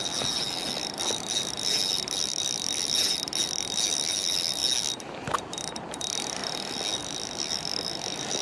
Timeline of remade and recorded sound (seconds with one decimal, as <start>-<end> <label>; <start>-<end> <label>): 0.0-4.6 remade; 4.6-5.7 recorded; 5.7-6.4 remade; 6.4-7.0 recorded; 7.0-8.4 remade